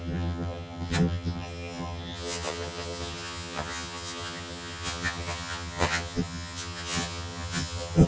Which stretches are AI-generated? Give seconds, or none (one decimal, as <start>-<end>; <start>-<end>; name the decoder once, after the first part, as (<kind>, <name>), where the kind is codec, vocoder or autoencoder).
0.0-8.1 (vocoder, HiFi-GAN)